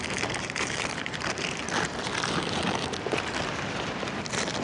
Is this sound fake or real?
fake